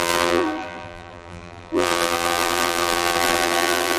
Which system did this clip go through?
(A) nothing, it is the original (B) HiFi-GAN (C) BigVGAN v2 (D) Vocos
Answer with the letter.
C